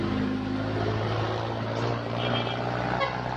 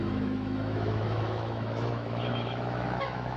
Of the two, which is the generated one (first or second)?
second